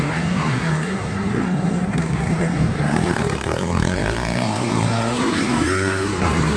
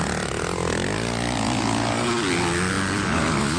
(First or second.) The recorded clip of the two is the second